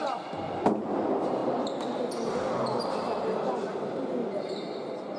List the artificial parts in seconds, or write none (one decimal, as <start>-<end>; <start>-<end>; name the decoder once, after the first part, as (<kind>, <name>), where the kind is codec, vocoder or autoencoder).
none